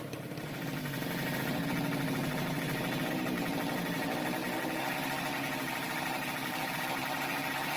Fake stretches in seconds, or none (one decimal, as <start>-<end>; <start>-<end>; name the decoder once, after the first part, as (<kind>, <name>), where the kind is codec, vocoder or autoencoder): none

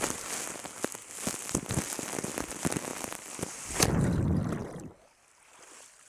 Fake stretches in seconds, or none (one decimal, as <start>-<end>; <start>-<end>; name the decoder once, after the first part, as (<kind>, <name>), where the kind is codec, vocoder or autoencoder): none

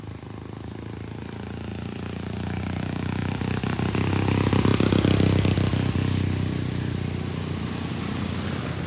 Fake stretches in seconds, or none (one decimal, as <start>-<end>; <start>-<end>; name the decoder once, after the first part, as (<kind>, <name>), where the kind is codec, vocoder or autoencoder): 1.7-2.6 (vocoder, BigVGAN v2); 3.2-4.1

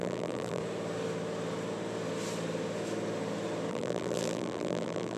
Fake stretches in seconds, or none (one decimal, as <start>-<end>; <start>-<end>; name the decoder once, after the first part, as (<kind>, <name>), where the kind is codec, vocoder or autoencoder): 0.0-0.6 (vocoder, BigVGAN v2); 3.7-5.2

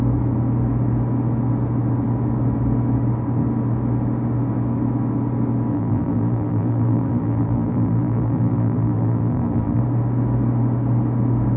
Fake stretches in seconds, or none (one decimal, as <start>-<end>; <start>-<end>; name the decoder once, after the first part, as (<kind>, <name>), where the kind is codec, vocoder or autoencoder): 5.7-9.8 (vocoder, BigVGAN v2)

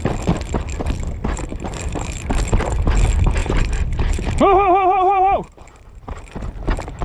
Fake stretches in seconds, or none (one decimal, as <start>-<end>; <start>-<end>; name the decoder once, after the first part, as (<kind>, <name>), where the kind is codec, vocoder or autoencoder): 1.5-2.1 (vocoder, BigVGAN v2); 3.4-6.2

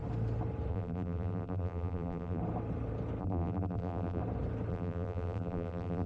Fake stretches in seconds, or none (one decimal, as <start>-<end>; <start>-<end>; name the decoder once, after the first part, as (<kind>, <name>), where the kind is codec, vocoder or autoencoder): 0.7-2.4 (vocoder, BigVGAN v2); 3.2-4.2; 4.7-6.1